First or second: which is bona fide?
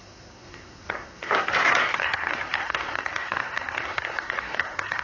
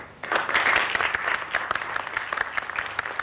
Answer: second